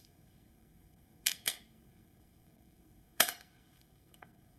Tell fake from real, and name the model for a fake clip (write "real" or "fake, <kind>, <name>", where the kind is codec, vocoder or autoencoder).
fake, codec, SNAC